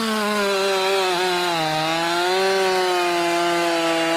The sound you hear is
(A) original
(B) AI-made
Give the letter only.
A